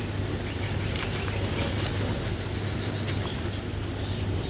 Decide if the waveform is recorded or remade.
recorded